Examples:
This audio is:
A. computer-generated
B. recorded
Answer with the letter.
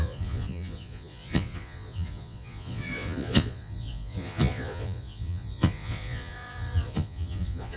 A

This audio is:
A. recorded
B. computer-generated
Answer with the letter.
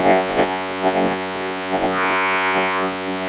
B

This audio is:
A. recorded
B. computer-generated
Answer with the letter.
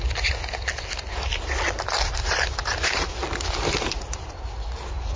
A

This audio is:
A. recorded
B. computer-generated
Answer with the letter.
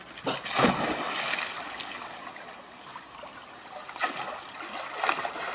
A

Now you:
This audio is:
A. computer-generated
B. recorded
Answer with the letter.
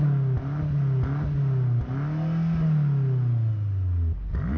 B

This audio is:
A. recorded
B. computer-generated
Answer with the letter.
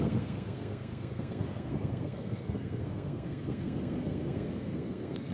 B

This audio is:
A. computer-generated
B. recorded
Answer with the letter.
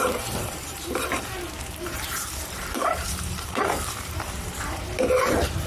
A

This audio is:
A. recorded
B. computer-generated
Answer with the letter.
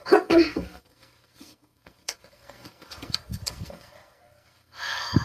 B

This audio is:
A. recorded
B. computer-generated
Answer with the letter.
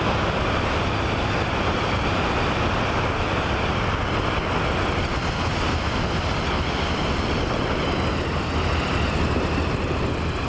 A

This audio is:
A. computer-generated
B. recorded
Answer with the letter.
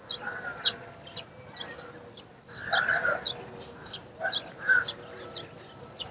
B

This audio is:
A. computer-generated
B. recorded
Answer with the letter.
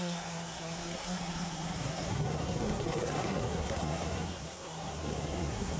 A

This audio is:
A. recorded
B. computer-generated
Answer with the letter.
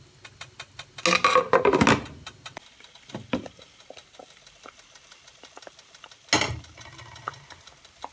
A